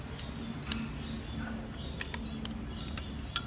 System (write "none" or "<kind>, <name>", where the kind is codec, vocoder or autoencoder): none